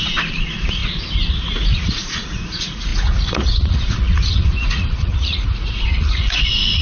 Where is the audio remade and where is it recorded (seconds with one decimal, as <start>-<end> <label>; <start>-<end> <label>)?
0.0-0.8 remade; 0.8-1.3 recorded; 1.3-6.8 remade